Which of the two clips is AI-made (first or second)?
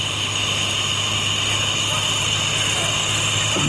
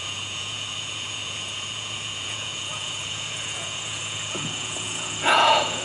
second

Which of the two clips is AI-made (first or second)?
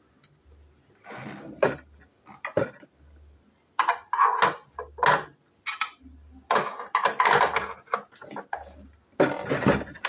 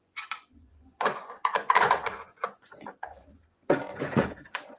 second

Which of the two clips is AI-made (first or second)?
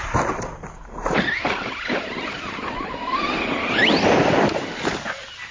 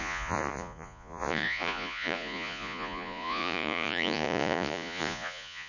second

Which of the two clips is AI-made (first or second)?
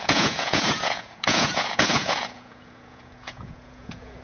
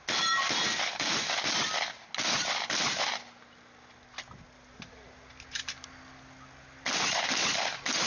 first